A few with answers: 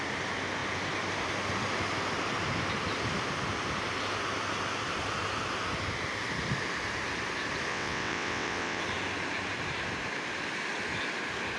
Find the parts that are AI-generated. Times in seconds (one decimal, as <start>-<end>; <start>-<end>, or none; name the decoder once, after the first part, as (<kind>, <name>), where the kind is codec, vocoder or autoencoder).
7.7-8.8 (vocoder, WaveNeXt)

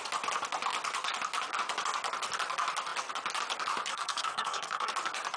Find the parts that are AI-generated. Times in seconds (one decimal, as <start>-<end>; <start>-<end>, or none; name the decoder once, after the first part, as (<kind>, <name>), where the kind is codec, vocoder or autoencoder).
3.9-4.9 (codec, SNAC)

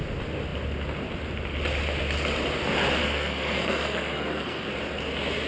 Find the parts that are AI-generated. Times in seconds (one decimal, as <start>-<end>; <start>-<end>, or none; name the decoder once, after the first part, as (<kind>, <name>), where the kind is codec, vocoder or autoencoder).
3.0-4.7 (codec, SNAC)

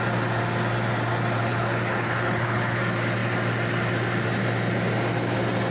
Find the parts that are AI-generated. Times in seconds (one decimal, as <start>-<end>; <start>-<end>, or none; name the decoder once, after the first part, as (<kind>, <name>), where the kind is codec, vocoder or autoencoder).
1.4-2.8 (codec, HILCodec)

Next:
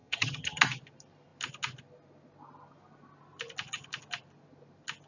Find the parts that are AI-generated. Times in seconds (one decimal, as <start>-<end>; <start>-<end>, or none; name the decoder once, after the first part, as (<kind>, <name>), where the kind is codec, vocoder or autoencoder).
0.0-0.6 (vocoder, HiFi-GAN)